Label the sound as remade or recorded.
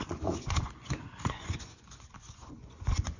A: remade